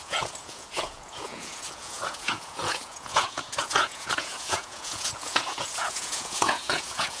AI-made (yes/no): yes